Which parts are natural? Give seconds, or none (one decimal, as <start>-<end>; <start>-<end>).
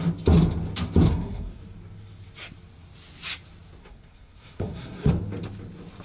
0.0-1.1; 1.6-3.8; 5.1-6.0